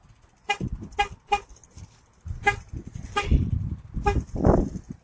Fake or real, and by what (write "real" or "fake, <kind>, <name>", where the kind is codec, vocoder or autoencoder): real